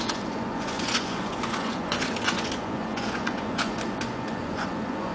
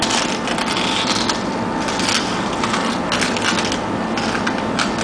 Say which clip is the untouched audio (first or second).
second